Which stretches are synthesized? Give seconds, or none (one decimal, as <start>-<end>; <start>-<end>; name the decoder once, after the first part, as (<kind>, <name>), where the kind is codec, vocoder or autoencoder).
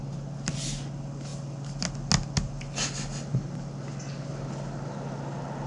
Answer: none